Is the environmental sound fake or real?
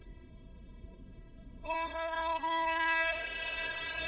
fake